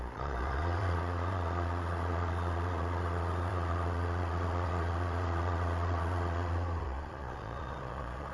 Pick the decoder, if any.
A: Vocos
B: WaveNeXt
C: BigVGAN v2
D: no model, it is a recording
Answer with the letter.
A